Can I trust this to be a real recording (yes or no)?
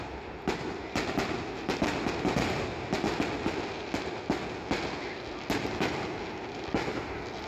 yes